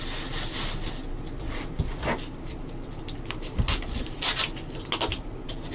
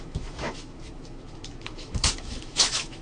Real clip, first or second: first